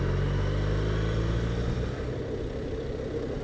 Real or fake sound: real